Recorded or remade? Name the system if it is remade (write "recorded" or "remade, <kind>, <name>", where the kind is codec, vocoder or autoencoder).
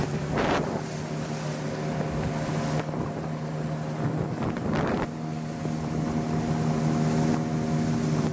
recorded